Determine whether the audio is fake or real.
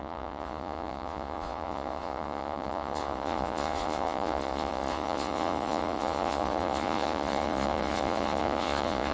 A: fake